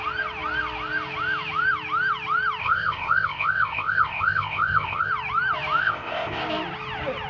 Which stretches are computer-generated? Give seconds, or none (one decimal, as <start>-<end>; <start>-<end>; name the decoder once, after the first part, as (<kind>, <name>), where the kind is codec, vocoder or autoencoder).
2.6-5.1 (codec, ZipCodec); 5.8-6.4